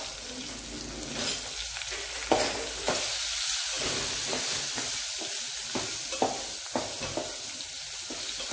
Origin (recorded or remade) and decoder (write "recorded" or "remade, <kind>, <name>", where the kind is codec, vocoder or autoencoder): recorded